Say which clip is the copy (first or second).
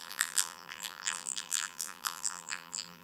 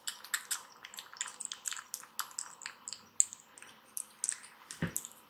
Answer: first